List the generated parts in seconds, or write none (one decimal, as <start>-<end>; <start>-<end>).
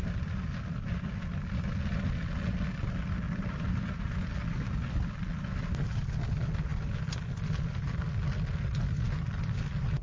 none